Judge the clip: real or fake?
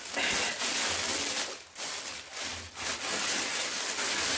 real